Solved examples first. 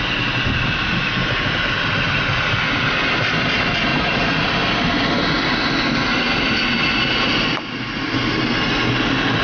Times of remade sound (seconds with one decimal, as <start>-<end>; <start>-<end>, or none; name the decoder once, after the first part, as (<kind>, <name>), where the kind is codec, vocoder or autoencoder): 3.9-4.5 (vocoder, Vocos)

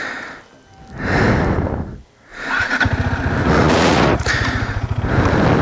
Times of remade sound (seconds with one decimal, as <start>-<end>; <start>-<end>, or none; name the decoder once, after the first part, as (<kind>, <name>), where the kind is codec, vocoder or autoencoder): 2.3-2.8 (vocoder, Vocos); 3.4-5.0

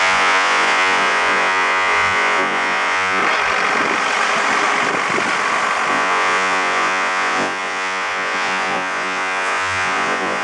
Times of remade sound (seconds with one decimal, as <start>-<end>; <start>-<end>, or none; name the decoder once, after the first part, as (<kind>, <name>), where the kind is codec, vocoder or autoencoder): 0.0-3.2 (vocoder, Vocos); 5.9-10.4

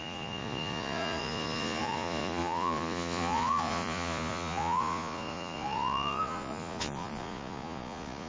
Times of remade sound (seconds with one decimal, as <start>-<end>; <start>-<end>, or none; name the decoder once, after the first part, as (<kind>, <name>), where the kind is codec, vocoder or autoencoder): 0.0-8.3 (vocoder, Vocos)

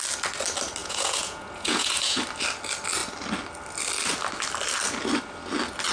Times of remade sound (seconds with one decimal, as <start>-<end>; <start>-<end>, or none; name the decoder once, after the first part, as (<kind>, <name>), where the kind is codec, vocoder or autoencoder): 0.8-2.2 (vocoder, Vocos)

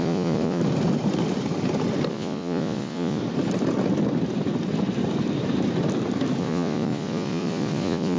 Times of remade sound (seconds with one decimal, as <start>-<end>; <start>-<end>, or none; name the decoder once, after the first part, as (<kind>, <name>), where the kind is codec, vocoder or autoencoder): 0.0-0.6 (vocoder, Vocos); 2.1-3.2; 6.4-8.2